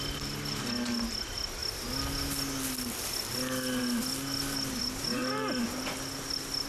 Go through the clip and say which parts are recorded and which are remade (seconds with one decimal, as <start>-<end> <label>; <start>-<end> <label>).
0.0-6.7 recorded